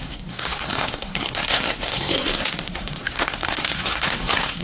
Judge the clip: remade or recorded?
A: remade